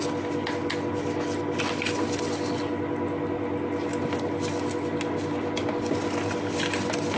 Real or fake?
real